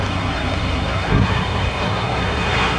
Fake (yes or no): yes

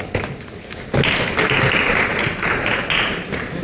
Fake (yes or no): no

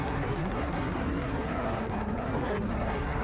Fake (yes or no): yes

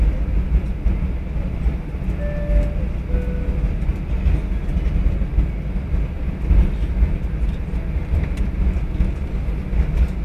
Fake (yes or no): no